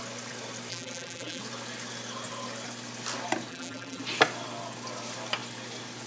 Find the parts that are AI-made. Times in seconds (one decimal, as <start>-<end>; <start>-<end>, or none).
0.7-1.4; 3.5-4.0